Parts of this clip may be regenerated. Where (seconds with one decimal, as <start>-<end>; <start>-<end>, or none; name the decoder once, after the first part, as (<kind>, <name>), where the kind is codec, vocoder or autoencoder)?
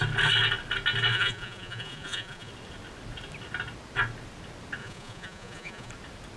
1.1-2.5 (vocoder, Vocos); 4.8-5.9